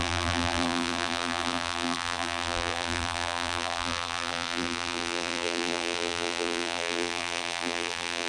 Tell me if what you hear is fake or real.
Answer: fake